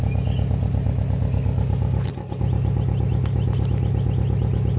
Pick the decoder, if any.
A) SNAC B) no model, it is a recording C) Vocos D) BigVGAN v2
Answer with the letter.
B